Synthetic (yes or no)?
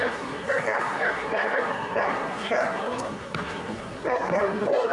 yes